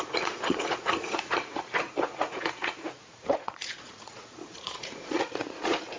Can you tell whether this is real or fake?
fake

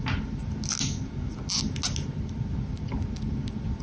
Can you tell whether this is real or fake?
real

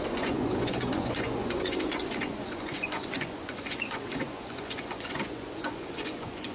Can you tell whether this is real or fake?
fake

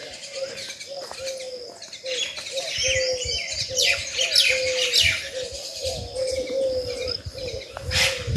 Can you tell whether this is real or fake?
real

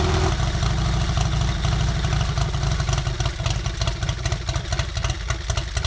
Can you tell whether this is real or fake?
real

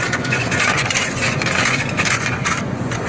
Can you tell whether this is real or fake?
fake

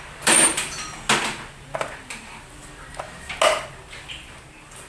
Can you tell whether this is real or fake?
real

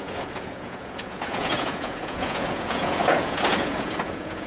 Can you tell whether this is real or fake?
fake